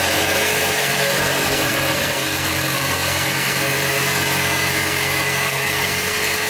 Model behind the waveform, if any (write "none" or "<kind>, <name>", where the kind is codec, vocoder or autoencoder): codec, SNAC